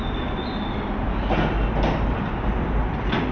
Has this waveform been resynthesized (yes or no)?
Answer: no